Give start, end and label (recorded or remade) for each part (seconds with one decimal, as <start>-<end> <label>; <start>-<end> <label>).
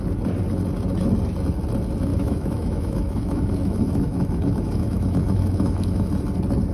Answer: 0.0-2.1 recorded; 2.1-6.1 remade; 6.1-6.7 recorded